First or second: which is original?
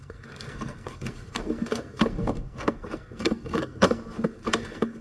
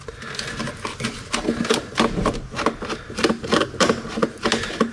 second